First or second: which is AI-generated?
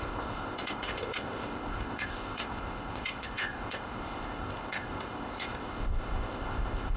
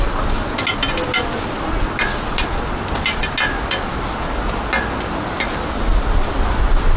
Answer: first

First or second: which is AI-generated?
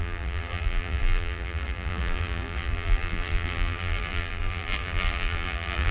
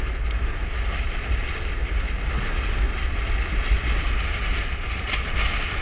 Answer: first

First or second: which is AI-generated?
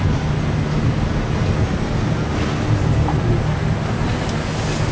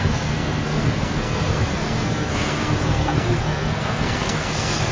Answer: second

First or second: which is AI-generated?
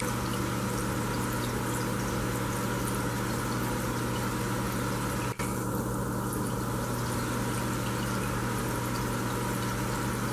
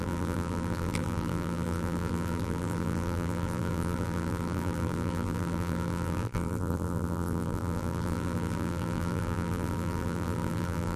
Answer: second